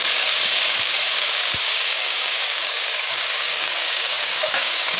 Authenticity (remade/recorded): remade